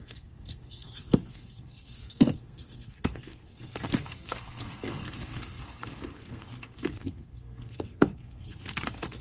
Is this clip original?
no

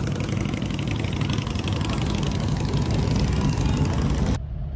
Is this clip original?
yes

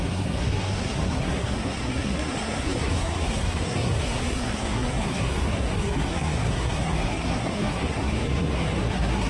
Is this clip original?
no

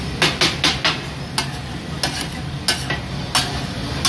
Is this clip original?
yes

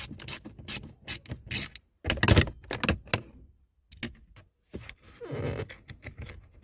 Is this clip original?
yes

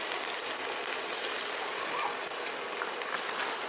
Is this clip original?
yes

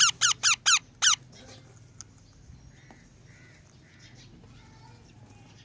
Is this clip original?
yes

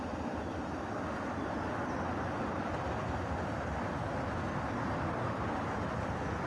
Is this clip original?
yes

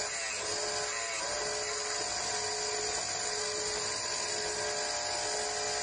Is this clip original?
yes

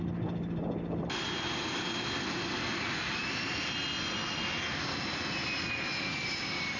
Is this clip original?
yes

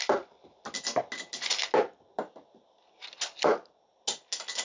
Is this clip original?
yes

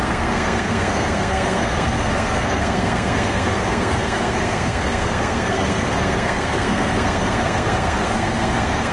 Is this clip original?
no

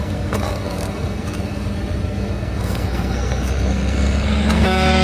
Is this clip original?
no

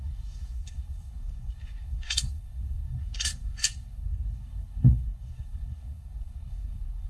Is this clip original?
no